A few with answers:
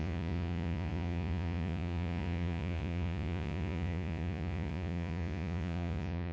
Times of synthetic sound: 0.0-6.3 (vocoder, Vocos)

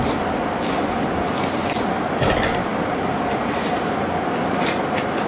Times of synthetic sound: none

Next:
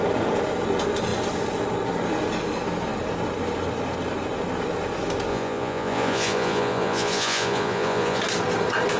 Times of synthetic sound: 5.3-8.2 (vocoder, Vocos)

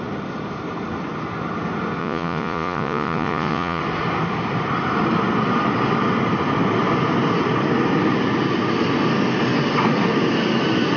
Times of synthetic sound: 2.0-3.8 (vocoder, Vocos)